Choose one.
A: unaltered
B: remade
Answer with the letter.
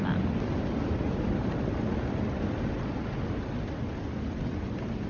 A